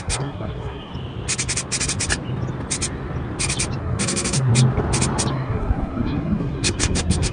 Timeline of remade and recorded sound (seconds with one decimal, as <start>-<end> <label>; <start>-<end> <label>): 0.0-0.9 remade; 0.9-3.8 recorded; 3.8-4.5 remade; 4.5-5.3 recorded; 5.3-7.3 remade